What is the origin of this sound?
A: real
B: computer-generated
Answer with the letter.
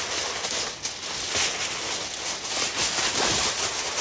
A